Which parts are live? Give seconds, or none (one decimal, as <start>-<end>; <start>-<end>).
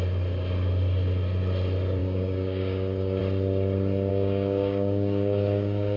0.0-2.0; 3.2-4.1